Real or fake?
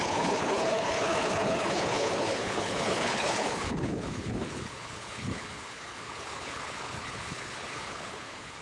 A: fake